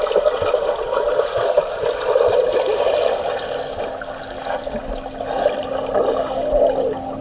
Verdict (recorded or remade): recorded